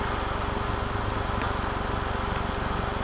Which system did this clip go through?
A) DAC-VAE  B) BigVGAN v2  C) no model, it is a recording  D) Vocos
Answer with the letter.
C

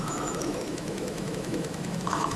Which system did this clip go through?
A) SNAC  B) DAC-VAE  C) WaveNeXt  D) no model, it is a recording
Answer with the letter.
B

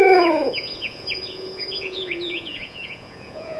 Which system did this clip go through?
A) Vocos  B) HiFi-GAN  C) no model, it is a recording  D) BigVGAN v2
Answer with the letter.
A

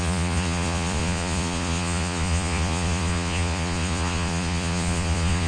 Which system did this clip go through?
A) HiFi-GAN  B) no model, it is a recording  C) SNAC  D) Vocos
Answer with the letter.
D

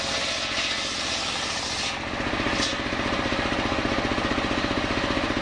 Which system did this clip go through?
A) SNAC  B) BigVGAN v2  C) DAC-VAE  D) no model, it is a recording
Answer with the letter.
D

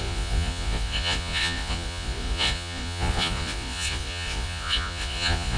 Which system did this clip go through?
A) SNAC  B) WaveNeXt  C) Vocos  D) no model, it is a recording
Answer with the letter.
C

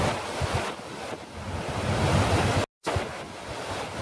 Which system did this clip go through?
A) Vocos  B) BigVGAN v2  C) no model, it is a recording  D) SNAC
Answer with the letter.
C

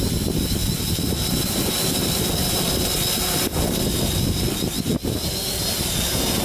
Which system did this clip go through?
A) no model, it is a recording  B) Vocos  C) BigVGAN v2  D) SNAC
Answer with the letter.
A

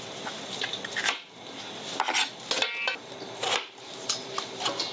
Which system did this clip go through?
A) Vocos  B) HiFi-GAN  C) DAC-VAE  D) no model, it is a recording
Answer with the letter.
D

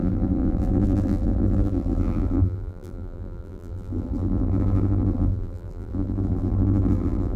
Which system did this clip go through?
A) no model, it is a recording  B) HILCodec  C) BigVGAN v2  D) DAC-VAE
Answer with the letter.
C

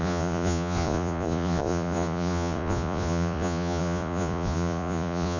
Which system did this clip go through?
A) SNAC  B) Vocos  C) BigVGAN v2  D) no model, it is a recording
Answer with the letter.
B